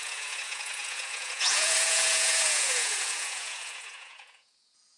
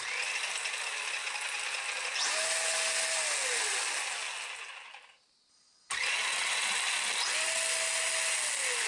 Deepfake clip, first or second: first